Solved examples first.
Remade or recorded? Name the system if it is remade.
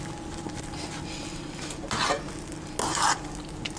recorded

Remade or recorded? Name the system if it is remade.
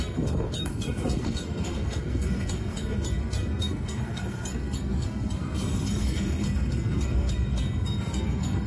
remade, codec, SNAC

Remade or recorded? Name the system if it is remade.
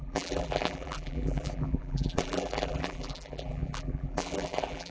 remade, vocoder, BigVGAN v2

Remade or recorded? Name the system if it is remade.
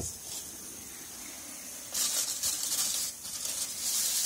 recorded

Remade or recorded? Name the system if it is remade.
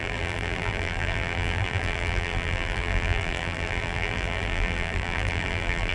remade, vocoder, BigVGAN v2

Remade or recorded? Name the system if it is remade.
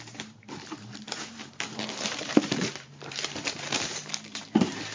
remade, vocoder, BigVGAN v2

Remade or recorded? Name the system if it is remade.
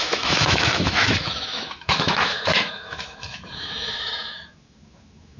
remade, autoencoder, DAC-VAE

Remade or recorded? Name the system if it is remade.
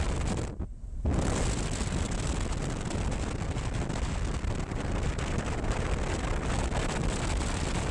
recorded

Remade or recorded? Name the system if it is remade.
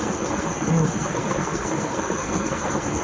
remade, codec, SNAC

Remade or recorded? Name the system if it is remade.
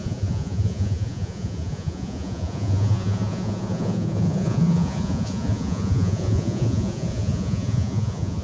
remade, vocoder, Vocos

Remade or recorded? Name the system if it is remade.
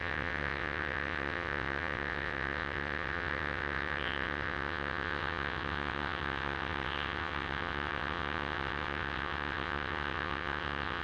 remade, vocoder, WaveNeXt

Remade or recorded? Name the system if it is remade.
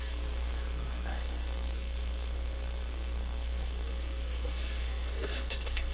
remade, codec, SNAC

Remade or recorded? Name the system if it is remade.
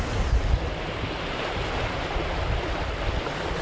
recorded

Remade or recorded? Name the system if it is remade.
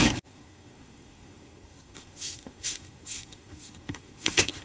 remade, codec, SNAC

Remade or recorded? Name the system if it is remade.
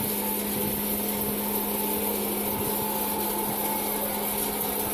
recorded